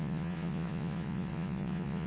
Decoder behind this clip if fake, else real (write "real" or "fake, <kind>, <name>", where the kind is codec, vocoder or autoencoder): fake, vocoder, Vocos